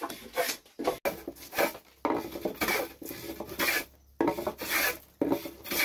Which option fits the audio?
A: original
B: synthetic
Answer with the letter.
A